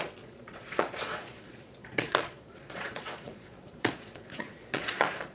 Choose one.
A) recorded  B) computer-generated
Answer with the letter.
B